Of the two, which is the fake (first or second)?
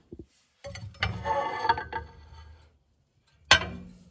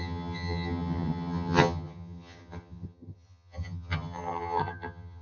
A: second